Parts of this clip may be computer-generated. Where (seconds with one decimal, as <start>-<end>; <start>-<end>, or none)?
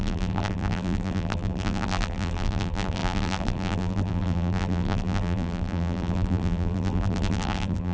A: 0.0-7.9